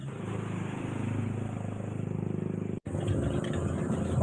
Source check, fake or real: real